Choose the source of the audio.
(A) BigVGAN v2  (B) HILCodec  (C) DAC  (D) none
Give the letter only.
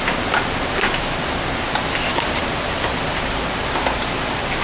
D